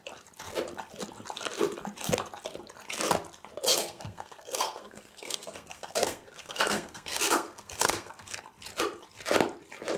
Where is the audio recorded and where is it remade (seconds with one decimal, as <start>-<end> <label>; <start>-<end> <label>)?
0.0-3.7 recorded; 3.7-8.4 remade; 8.4-10.0 recorded